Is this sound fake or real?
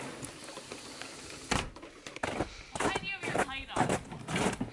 real